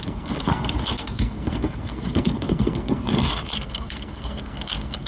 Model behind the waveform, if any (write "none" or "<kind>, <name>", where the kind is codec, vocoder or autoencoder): codec, SNAC